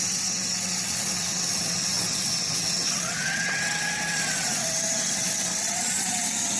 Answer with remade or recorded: remade